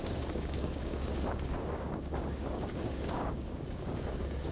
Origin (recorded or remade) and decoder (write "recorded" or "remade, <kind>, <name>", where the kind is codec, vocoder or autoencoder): remade, codec, DAC